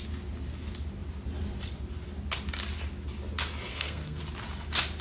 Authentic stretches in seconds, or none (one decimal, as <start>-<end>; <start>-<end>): 0.0-3.7; 4.2-5.0